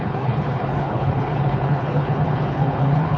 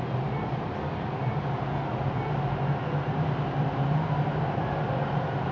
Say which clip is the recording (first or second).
second